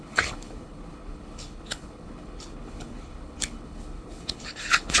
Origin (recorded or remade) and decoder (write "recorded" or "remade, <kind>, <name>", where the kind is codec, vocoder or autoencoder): remade, codec, HILCodec